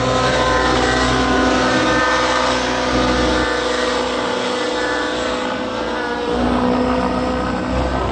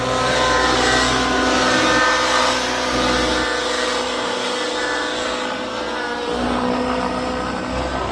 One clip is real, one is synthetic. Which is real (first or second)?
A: second